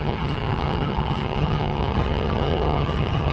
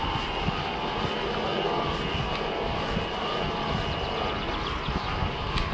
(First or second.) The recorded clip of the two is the second